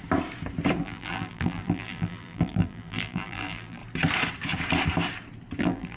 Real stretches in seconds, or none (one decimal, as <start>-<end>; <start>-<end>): 0.0-0.8; 3.8-5.6